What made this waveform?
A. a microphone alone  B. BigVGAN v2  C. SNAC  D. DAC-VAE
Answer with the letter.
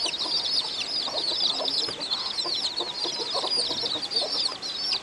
A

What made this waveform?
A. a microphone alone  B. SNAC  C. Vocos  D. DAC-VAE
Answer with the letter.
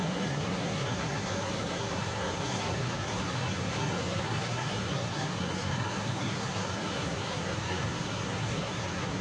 B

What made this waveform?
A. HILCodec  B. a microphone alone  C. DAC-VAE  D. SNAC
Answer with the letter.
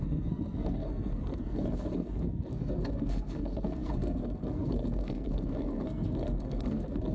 D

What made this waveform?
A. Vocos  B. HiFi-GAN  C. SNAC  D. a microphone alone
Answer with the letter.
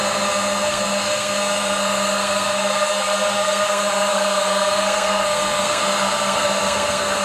C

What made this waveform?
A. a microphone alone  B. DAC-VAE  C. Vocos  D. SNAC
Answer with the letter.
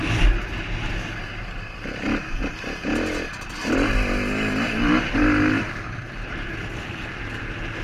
A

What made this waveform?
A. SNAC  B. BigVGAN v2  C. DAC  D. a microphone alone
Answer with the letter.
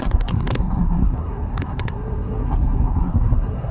A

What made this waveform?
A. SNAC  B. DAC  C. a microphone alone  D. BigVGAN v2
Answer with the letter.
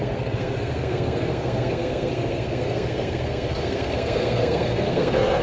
A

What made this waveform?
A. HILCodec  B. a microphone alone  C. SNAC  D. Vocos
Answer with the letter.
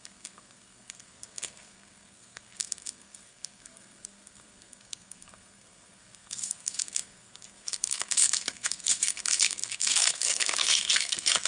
C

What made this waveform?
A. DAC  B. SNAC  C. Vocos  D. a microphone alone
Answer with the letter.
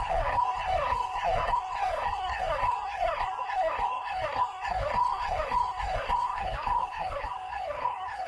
B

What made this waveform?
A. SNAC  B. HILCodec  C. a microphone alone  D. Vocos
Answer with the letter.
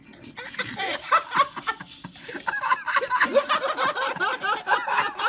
C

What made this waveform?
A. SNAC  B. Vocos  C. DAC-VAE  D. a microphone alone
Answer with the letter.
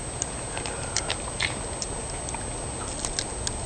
D